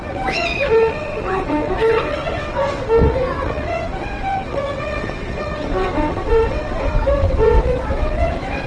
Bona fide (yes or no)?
no